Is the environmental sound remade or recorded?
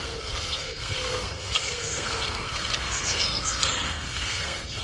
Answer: remade